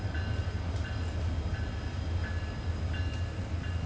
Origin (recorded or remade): recorded